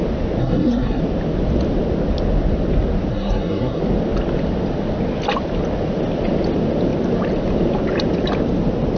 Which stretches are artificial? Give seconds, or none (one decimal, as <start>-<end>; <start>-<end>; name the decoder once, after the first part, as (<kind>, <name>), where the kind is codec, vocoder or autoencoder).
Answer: 0.4-1.0 (codec, SNAC); 3.1-3.8